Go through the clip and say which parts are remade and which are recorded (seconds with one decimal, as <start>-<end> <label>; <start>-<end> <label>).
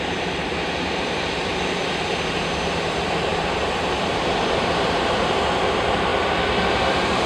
0.0-1.5 remade; 1.5-2.4 recorded; 2.4-6.1 remade; 6.1-6.7 recorded; 6.7-7.3 remade